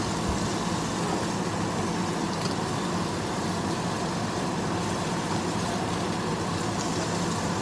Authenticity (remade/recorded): recorded